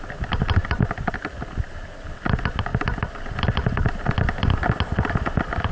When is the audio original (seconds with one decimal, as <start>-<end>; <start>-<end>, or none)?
0.0-5.7